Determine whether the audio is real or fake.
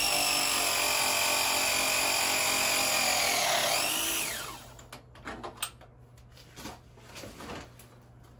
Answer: real